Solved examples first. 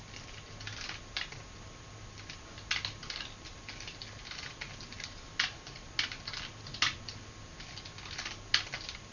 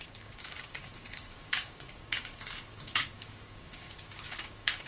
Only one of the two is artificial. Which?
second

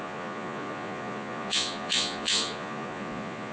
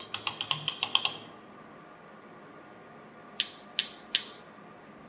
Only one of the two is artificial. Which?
first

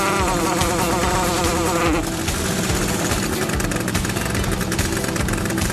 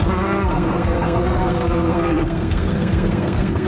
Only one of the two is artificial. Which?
second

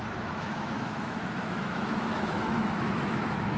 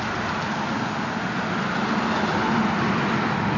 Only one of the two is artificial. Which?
first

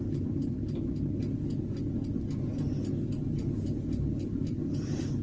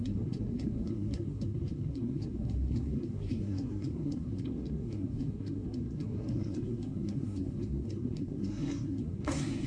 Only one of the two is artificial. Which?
second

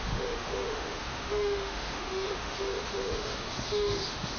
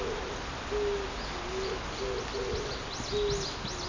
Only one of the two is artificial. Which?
first